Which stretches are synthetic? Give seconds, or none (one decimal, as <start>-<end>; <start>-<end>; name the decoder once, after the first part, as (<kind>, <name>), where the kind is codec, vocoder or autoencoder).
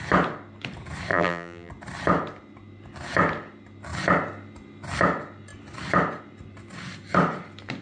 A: 1.1-1.7 (vocoder, BigVGAN v2)